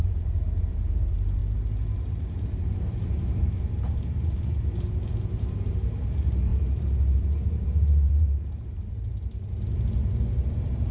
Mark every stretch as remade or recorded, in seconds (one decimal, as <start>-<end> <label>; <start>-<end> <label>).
0.0-1.4 remade; 1.4-2.4 recorded; 2.4-10.9 remade